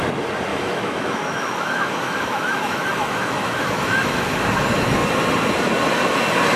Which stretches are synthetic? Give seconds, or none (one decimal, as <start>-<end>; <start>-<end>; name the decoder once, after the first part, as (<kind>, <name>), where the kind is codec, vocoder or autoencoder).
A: 0.5-4.5 (autoencoder, DAC-VAE)